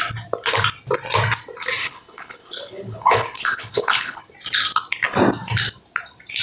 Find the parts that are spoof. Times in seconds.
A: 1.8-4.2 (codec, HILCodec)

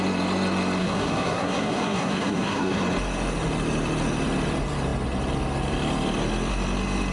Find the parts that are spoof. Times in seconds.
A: 0.8-2.8 (codec, SNAC)

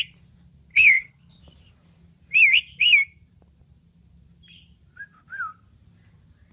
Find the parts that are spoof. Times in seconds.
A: 0.7-1.4 (codec, HILCodec)

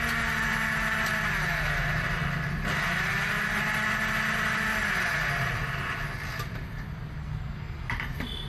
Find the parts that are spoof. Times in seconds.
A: 7.2-7.9 (codec, SNAC)

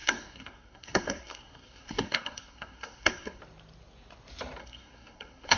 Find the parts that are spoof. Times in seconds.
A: 0.0-3.4 (codec, SNAC); 4.6-5.6

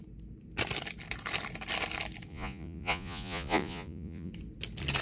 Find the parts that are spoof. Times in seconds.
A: 2.3-4.3 (vocoder, Vocos)